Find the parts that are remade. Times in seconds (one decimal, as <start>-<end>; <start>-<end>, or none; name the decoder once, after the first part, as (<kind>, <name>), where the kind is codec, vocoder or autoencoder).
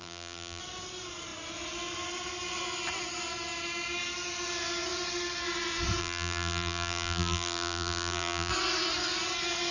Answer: 0.0-0.6 (vocoder, BigVGAN v2); 6.0-8.5